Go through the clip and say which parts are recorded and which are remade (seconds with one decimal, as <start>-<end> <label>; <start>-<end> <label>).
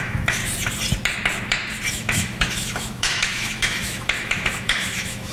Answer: 0.0-0.4 remade; 0.4-1.9 recorded; 1.9-5.3 remade